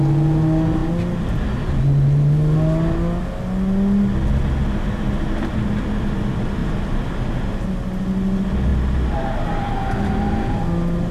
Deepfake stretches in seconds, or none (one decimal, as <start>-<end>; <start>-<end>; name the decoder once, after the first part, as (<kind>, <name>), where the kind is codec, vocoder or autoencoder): none